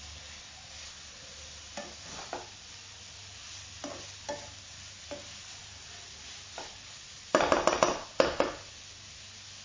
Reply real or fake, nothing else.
real